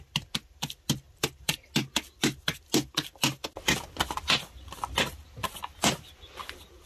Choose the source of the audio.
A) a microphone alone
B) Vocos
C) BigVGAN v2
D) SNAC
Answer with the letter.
A